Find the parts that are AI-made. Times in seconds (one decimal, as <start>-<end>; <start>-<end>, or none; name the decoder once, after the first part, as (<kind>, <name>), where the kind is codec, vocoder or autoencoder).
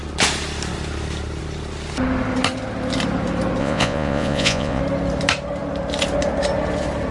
3.6-4.8 (vocoder, Vocos)